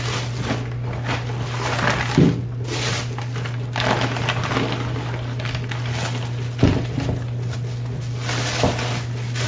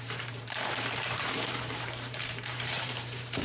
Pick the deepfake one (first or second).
second